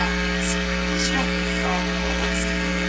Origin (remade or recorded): remade